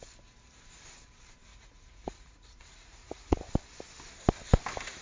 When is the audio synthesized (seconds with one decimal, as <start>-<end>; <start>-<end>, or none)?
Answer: 1.5-3.5